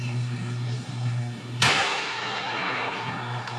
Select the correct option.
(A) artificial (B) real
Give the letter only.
A